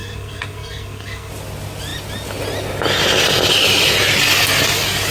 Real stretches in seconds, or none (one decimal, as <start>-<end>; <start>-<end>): 1.3-5.1